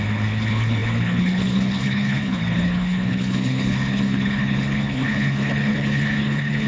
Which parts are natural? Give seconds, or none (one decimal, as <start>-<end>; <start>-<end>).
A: none